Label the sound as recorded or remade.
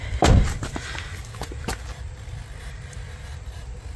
recorded